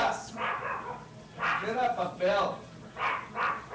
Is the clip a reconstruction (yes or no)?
no